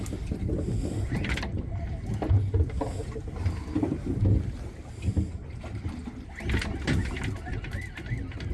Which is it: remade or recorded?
recorded